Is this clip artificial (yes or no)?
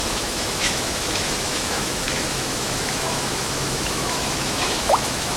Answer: yes